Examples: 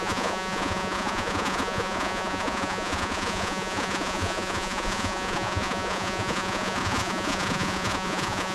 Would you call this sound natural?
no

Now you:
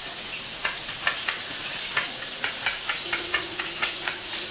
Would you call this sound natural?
no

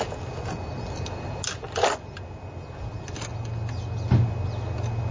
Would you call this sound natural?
yes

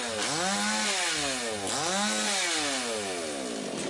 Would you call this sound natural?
yes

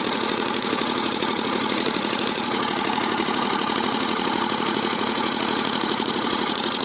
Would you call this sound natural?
no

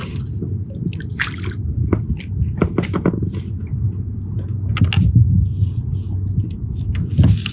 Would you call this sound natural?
yes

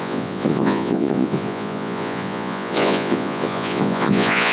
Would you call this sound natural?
no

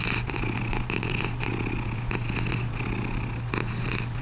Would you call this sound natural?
yes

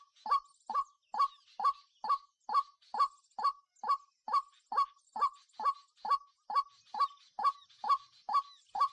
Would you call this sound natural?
yes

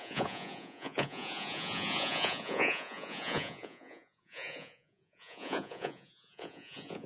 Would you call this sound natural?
no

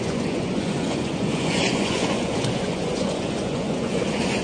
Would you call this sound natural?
no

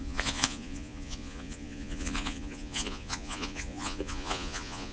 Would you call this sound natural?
no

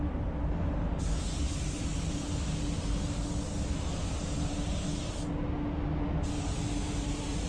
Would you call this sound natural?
yes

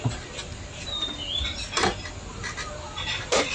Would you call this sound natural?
yes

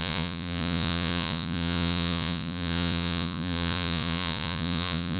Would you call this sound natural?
no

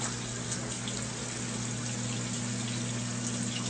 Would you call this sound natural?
yes